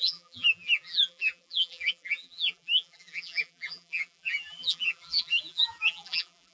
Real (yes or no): no